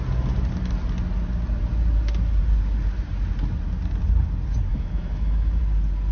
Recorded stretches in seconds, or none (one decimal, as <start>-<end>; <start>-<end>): 0.0-4.7; 5.6-6.1